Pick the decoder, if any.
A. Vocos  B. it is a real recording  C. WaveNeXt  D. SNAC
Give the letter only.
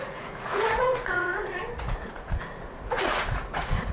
A